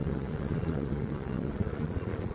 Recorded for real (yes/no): no